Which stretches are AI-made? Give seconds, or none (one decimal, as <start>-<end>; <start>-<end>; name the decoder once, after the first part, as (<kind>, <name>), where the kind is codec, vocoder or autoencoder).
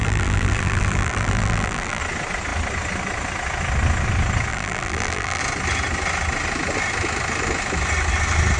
0.0-2.0 (vocoder, BigVGAN v2); 4.5-5.4